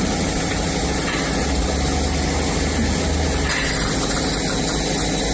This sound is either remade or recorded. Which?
recorded